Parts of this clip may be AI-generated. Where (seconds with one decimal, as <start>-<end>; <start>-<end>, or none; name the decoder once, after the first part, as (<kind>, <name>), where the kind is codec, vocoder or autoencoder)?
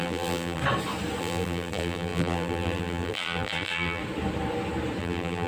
0.0-0.6 (vocoder, BigVGAN v2); 1.2-4.0; 5.0-5.5